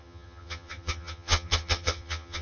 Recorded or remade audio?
remade